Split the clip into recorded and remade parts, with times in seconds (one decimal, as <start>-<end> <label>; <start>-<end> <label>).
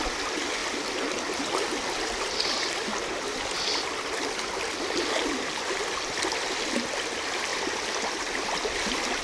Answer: 0.0-9.2 recorded